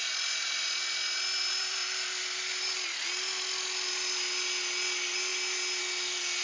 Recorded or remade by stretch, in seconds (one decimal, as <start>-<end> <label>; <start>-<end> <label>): 0.0-1.4 recorded; 1.4-2.2 remade; 2.2-6.4 recorded